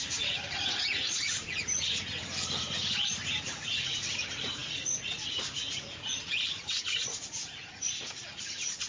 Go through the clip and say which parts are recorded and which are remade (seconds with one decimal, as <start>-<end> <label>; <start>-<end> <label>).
0.0-1.6 remade; 1.6-3.4 recorded; 3.4-8.9 remade